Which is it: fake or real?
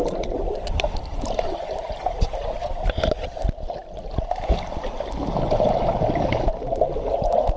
real